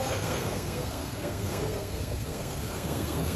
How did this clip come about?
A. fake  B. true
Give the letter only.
A